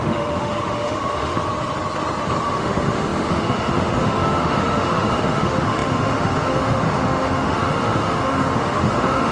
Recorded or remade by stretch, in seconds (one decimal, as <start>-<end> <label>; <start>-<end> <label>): 0.0-1.4 remade; 1.4-2.4 recorded; 2.4-9.3 remade